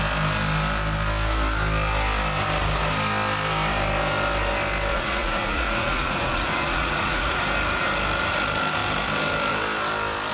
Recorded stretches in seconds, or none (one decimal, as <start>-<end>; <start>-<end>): 0.0-4.9; 7.4-10.3